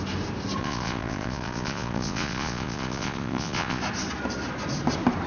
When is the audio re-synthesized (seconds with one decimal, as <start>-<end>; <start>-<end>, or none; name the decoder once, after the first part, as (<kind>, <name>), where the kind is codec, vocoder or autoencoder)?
0.6-3.8 (vocoder, Vocos)